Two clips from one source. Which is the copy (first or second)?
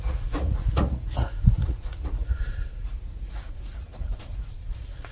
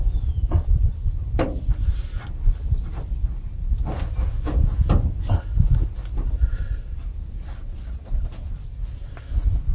first